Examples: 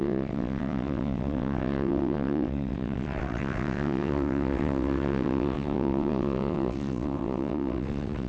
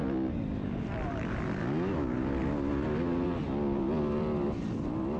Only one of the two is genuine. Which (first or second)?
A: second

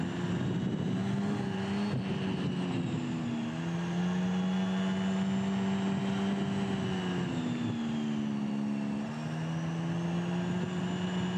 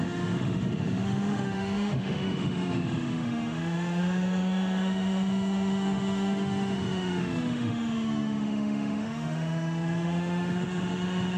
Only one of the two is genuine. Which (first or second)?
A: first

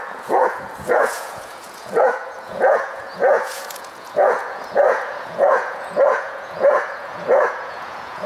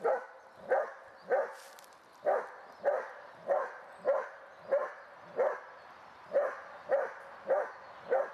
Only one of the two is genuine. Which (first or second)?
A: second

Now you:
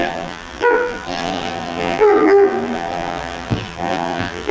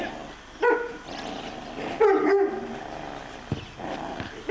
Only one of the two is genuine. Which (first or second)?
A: second